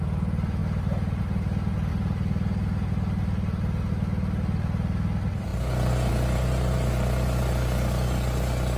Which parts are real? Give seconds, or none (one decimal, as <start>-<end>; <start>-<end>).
0.0-8.8